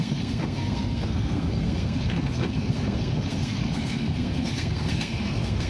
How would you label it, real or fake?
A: fake